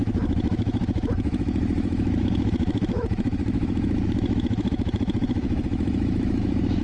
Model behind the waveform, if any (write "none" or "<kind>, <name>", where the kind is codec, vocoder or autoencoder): autoencoder, DAC-VAE